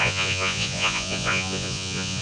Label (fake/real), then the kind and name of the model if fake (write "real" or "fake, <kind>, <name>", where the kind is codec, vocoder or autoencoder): fake, vocoder, Vocos